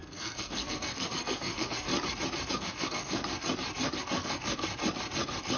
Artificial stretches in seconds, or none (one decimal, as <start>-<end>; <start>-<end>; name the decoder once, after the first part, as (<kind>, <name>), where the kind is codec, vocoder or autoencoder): 0.0-1.9 (codec, SNAC); 2.5-3.2; 4.0-4.7